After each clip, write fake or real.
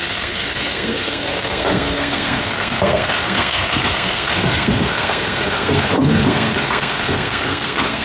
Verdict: fake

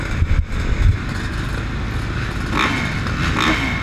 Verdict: real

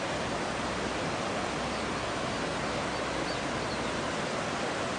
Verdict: real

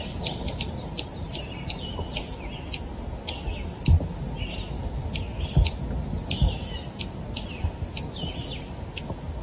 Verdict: real